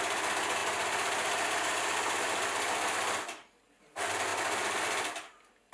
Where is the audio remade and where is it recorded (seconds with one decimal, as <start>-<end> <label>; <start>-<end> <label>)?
0.0-5.7 recorded